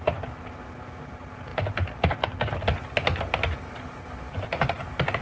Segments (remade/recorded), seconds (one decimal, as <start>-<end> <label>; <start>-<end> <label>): 0.0-5.2 recorded